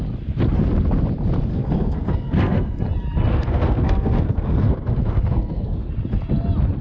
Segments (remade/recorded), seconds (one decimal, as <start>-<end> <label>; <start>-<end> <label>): 0.0-1.5 recorded; 1.5-2.8 remade; 2.8-3.3 recorded; 3.3-5.9 remade; 5.9-6.8 recorded